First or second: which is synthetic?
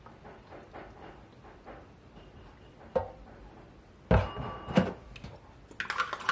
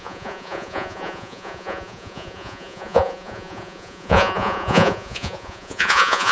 second